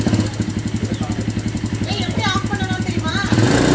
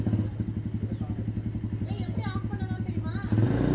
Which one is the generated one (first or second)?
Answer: first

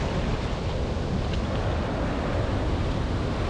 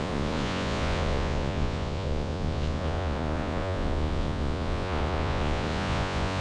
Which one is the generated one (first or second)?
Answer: second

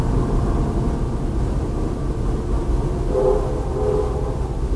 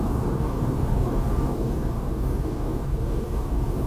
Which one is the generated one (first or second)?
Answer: second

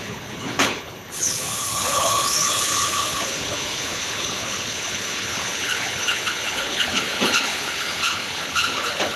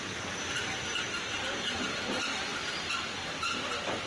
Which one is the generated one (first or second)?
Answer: first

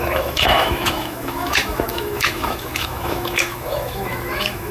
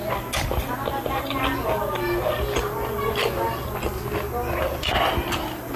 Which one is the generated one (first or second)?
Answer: first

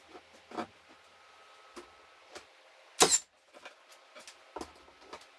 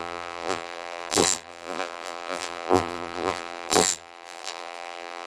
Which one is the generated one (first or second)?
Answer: second